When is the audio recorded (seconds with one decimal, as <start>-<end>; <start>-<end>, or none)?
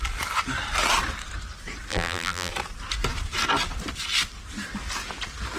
0.0-1.9; 2.5-5.6